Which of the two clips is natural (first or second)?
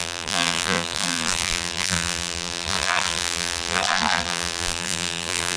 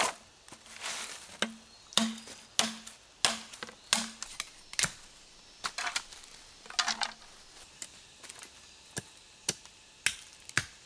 second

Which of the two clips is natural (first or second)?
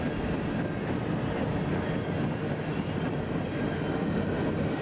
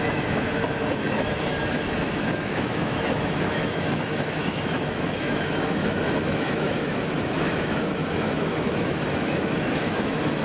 first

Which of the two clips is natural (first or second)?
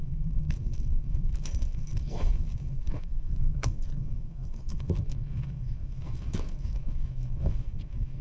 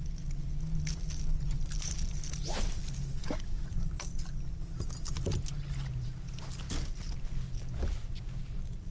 second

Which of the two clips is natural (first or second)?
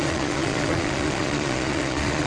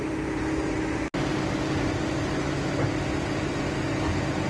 second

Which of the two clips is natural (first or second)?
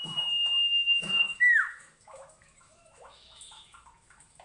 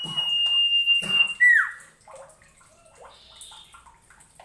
second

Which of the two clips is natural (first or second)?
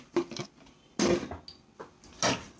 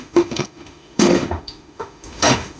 first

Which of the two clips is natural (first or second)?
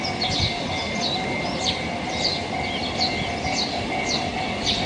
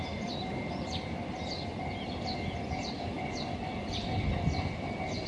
first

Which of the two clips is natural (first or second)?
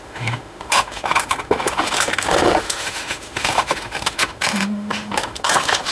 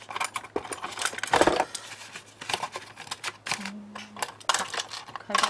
second